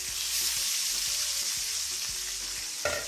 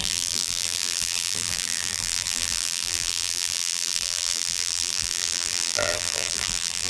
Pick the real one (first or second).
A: first